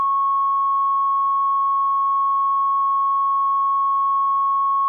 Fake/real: real